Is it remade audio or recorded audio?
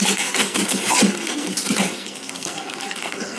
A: remade